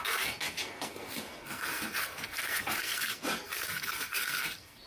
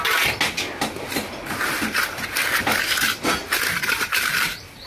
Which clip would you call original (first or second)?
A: second